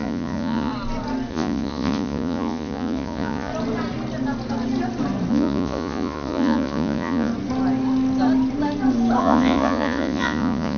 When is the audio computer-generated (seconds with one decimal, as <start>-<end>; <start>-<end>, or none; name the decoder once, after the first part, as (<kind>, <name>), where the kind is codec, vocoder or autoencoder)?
0.0-0.7 (vocoder, Vocos); 1.3-3.5; 5.3-7.3; 9.2-10.8